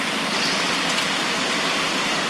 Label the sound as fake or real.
real